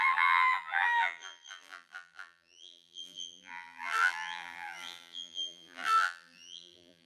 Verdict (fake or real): fake